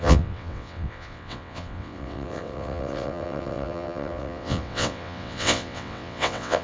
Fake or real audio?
fake